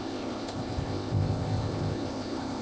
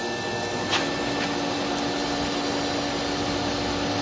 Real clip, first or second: second